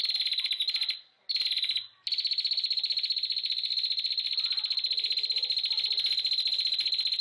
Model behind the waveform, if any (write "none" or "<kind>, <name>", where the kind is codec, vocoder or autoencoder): none